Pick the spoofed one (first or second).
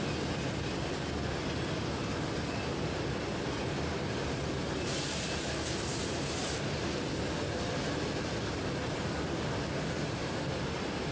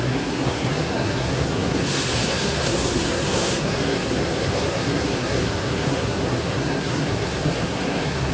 second